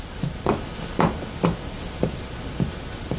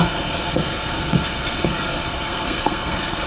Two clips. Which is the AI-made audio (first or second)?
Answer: second